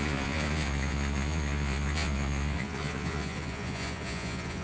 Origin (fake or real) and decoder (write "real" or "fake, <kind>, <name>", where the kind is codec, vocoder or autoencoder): fake, vocoder, Vocos